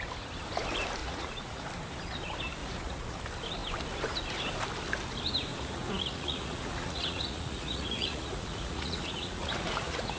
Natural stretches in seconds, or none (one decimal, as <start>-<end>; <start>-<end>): 0.0-1.0; 1.7-2.6; 3.2-5.5